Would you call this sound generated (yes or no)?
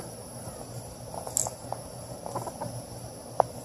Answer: no